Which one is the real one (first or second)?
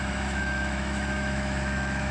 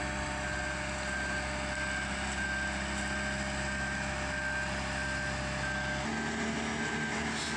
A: second